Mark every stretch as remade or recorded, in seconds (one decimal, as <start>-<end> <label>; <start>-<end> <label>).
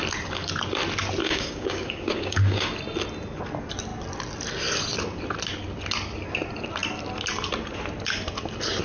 0.0-1.2 recorded; 1.2-2.7 remade; 2.7-8.8 recorded